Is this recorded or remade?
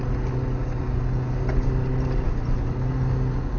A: recorded